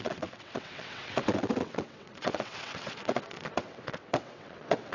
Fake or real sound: fake